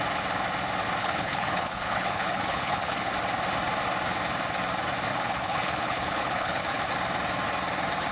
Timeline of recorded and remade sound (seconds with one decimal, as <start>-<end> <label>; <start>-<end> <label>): 0.0-1.0 recorded; 1.0-3.1 remade; 3.1-5.1 recorded; 5.1-6.9 remade; 6.9-8.1 recorded